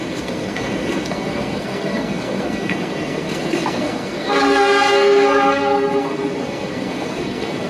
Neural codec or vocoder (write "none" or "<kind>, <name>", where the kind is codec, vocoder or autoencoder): codec, SNAC